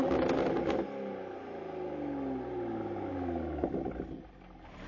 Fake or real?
real